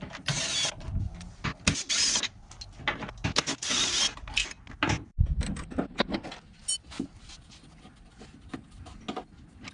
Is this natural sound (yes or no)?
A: yes